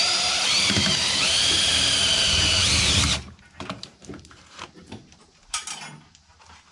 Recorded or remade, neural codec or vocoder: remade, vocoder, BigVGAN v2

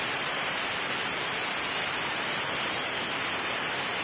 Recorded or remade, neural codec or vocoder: remade, vocoder, BigVGAN v2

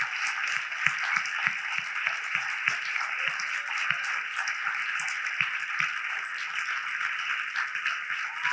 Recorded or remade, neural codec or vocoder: recorded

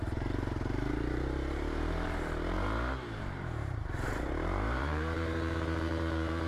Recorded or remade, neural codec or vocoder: remade, vocoder, BigVGAN v2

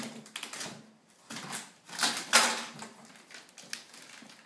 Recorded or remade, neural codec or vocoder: recorded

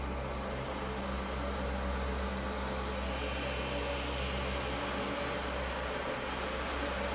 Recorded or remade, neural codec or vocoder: recorded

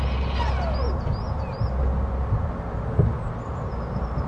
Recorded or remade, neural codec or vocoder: recorded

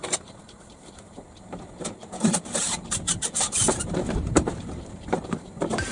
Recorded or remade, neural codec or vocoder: remade, vocoder, BigVGAN v2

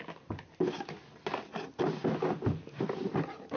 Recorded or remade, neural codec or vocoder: recorded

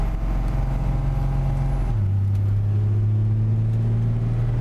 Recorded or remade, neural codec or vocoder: recorded